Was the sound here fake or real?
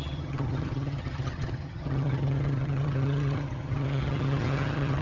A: fake